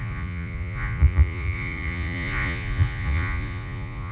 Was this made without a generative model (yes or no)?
no